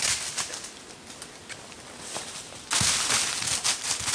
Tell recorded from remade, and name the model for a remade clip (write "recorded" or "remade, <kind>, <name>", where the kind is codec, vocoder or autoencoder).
recorded